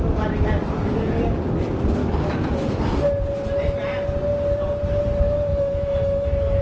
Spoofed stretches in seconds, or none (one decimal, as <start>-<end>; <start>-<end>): 2.0-2.8; 5.5-6.6